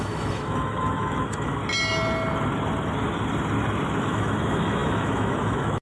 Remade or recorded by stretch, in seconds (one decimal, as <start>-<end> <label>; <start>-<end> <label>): 0.0-1.6 remade; 1.6-4.0 recorded; 4.0-5.8 remade